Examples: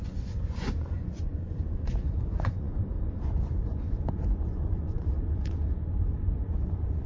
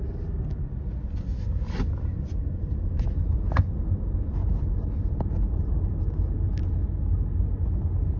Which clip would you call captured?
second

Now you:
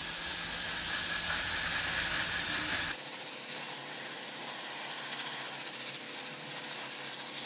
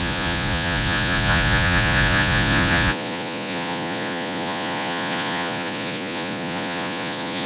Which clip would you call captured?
first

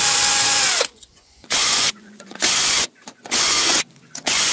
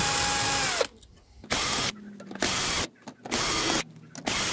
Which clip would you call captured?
second